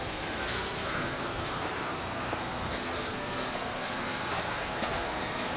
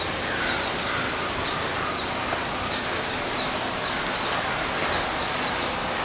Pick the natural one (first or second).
second